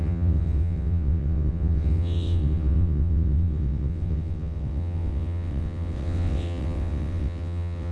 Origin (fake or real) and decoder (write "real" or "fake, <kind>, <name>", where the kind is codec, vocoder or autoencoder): fake, vocoder, WaveNeXt